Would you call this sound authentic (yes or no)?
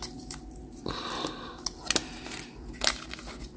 yes